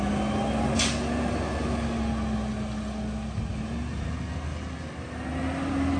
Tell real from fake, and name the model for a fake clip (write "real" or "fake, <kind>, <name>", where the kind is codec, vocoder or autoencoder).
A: real